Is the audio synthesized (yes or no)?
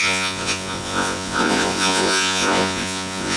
yes